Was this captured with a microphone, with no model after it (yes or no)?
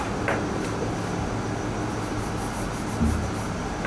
yes